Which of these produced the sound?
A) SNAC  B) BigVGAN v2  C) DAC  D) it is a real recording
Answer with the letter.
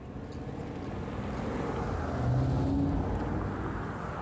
D